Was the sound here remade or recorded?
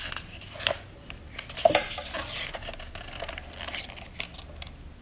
recorded